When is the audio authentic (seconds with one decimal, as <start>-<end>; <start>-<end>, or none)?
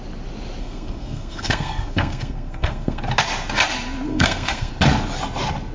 0.0-0.6; 3.0-4.1; 4.7-5.7